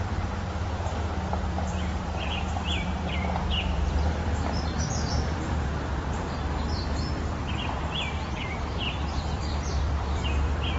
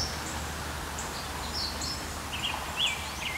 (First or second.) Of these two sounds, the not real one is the first